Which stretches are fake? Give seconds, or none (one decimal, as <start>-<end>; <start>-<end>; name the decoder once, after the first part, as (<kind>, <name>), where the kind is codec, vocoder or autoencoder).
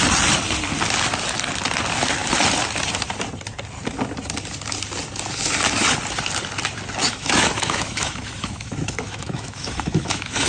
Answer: 7.0-10.5 (autoencoder, DAC-VAE)